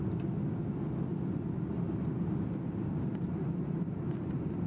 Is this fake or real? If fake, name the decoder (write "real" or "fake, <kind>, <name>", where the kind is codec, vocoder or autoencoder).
real